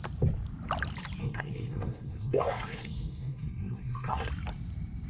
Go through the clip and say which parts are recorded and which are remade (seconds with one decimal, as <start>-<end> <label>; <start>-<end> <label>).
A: 0.0-1.2 recorded; 1.2-4.3 remade; 4.3-5.1 recorded